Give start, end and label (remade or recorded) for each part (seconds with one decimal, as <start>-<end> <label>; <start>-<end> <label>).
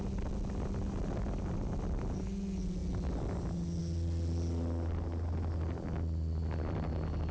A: 0.0-7.3 recorded